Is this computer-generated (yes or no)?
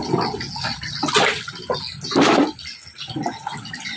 no